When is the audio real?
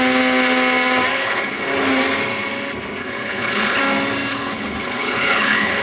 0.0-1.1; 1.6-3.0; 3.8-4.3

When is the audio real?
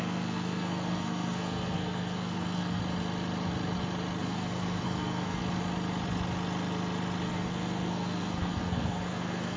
2.8-4.2; 5.4-7.3